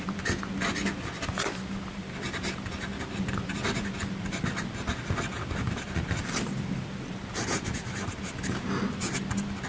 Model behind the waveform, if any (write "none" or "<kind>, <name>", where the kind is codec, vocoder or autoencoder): none